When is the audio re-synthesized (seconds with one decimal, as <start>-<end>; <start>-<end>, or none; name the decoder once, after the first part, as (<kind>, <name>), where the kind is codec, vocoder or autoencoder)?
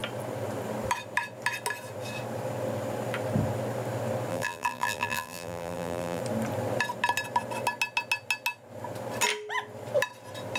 4.3-6.2 (vocoder, BigVGAN v2)